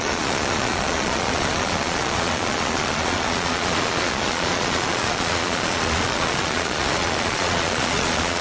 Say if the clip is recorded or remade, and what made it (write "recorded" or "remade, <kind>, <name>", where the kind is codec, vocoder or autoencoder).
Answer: remade, vocoder, Vocos